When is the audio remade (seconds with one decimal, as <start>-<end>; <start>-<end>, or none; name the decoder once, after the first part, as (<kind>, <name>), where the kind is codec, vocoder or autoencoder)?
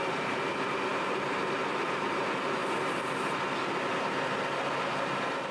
none